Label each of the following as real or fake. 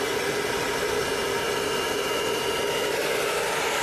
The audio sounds real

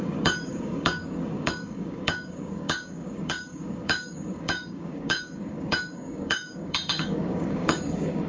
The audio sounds fake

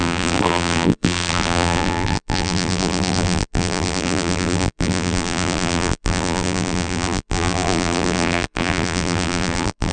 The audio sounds fake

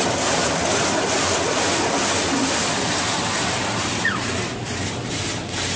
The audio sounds real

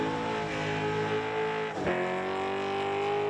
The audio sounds real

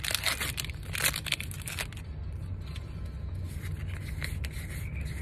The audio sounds real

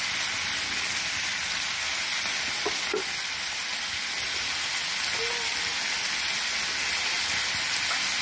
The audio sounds real